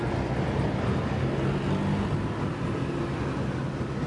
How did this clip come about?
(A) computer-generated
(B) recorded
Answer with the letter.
B